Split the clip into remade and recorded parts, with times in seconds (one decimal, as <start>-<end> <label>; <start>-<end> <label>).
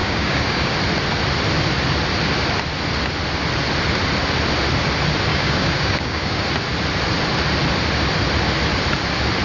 0.0-0.7 remade; 0.7-5.3 recorded; 5.3-6.4 remade; 6.4-9.4 recorded